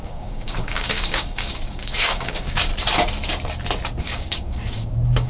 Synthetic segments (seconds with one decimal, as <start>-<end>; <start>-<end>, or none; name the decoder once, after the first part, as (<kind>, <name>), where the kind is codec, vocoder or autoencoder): 0.0-2.7 (codec, DAC); 4.0-5.3